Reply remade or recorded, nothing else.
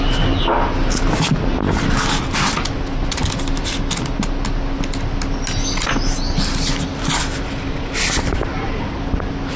recorded